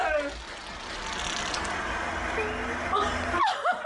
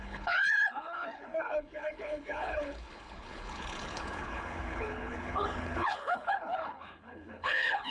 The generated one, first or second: second